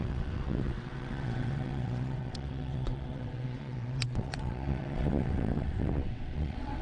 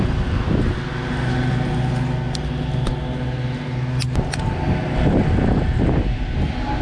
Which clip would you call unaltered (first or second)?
second